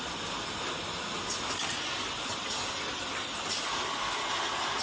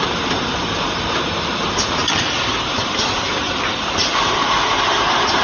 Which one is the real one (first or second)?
first